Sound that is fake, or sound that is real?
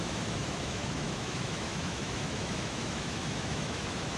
fake